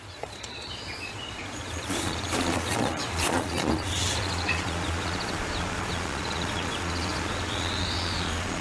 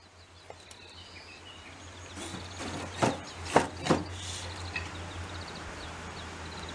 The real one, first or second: second